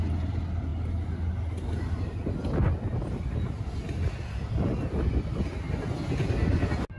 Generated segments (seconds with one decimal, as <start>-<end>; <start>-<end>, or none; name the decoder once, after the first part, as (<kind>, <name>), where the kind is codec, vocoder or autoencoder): none